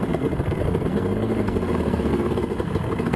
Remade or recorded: remade